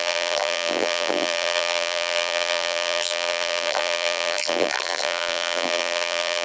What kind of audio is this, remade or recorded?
remade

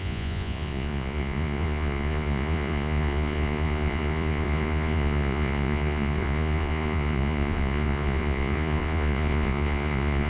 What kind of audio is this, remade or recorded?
remade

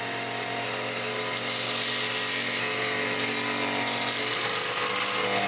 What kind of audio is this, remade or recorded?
recorded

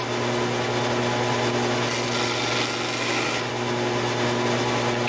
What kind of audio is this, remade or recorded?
recorded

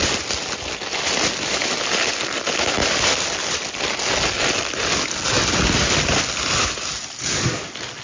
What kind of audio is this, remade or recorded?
recorded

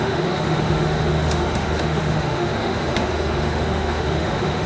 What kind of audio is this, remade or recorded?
remade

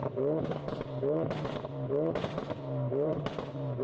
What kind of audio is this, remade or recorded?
remade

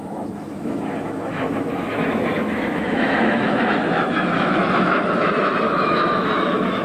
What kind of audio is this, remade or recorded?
remade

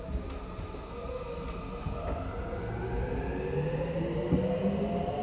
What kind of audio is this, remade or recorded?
recorded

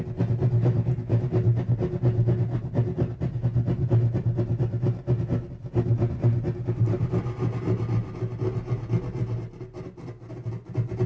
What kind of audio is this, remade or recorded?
recorded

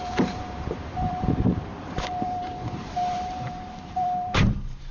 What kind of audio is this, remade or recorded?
remade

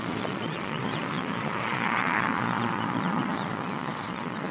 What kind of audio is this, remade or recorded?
remade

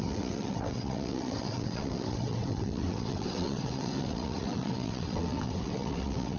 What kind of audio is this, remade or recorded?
remade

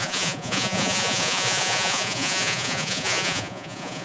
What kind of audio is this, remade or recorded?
remade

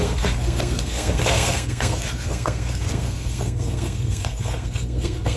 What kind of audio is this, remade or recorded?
remade